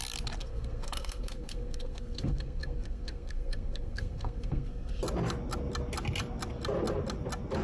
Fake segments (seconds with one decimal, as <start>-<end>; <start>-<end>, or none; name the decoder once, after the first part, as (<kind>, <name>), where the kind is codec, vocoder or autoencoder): 0.4-5.0 (codec, SNAC)